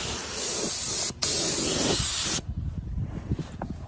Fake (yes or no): no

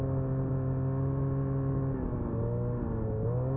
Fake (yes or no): no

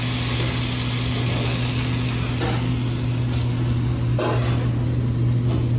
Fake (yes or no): no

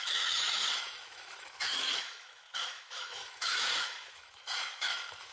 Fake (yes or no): yes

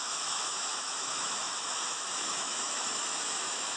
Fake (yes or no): yes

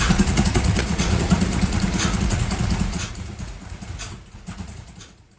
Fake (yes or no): yes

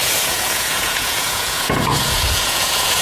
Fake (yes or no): yes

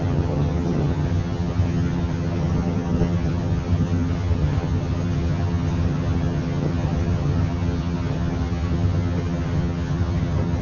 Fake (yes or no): yes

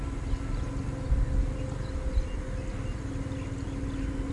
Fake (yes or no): no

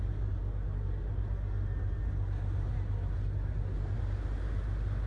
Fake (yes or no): no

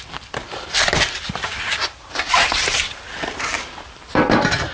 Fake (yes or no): yes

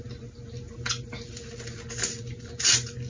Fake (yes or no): no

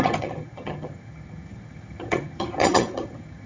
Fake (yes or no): yes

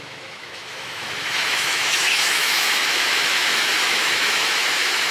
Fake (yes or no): yes